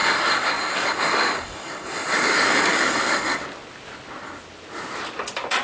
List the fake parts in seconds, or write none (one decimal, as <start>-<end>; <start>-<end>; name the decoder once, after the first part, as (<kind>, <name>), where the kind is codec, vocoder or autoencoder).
0.0-3.4 (codec, DAC)